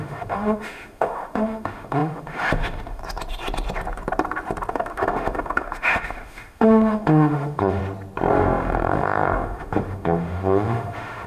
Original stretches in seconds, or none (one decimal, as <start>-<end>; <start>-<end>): 3.0-4.7; 7.8-8.3